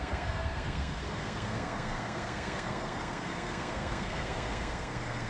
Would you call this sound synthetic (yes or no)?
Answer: yes